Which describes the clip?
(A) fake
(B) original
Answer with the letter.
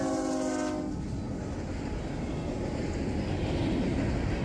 B